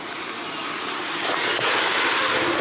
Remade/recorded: recorded